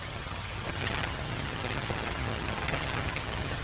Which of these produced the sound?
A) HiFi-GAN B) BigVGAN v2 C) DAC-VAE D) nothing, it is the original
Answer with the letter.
A